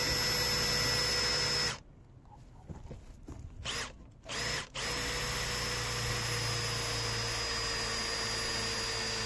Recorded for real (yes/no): yes